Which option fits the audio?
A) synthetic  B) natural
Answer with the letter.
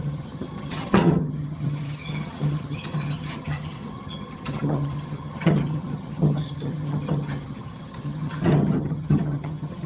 A